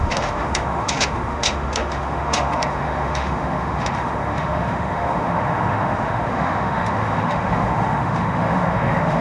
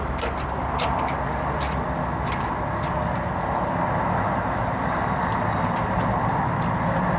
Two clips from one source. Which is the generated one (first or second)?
first